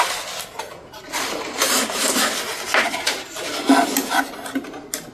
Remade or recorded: recorded